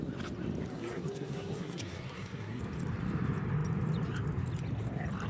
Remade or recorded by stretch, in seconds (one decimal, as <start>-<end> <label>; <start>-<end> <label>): 0.0-0.7 recorded; 0.7-2.6 remade; 2.6-5.3 recorded